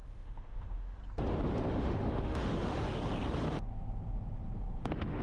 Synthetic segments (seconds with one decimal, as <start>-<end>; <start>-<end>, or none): 0.0-1.0; 1.7-3.0; 4.8-5.2